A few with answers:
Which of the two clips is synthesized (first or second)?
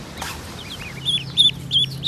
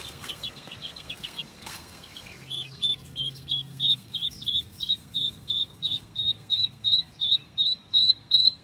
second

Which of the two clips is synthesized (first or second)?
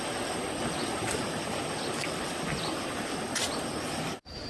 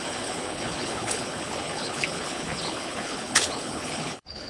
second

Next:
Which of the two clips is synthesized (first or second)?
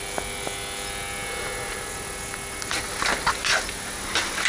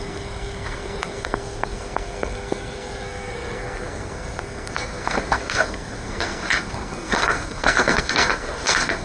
second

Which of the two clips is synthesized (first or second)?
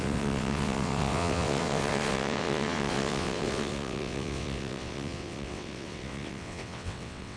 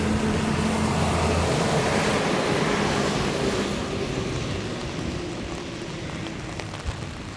first